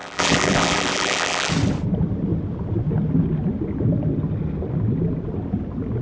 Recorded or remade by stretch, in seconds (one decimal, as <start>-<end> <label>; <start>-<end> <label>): 0.0-1.5 remade; 1.5-6.0 recorded